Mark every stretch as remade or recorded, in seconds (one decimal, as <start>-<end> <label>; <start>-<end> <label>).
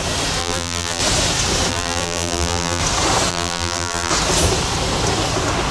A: 0.0-0.4 recorded; 0.4-1.0 remade; 1.0-1.7 recorded; 1.7-2.8 remade; 2.8-3.3 recorded; 3.3-4.1 remade; 4.1-5.7 recorded